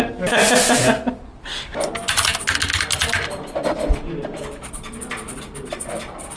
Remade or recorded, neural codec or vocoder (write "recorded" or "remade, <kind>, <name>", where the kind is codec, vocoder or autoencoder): recorded